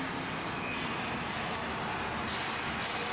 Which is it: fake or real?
real